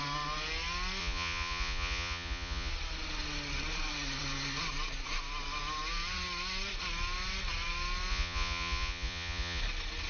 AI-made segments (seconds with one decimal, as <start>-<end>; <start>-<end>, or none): 1.0-2.7; 8.1-9.6